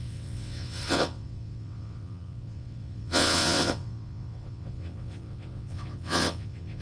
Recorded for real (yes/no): no